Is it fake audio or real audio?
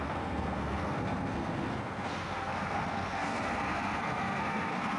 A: fake